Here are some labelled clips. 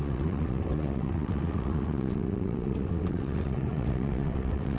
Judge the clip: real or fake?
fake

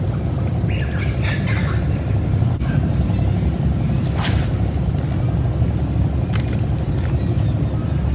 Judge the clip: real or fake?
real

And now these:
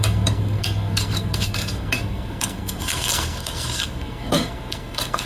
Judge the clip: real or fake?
fake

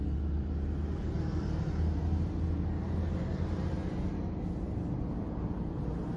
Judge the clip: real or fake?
real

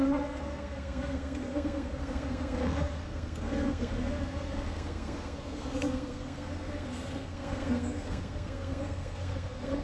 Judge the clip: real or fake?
fake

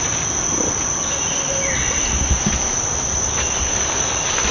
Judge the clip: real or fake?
real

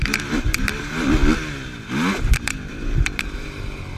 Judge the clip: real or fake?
real